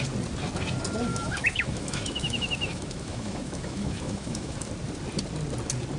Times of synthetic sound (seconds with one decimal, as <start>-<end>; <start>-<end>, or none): 1.1-4.7